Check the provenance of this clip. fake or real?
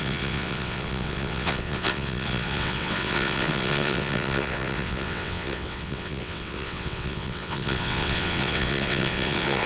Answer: fake